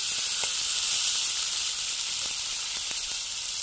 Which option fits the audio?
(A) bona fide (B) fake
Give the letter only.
A